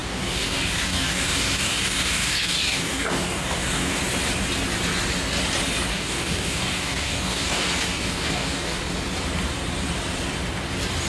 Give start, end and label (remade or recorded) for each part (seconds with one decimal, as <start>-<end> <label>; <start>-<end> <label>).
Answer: 0.0-4.0 remade; 4.0-5.9 recorded; 5.9-8.8 remade; 8.8-11.1 recorded